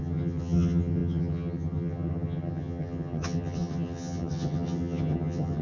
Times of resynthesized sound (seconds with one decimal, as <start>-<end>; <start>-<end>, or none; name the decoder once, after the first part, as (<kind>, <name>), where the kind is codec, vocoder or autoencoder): 0.0-5.6 (vocoder, HiFi-GAN)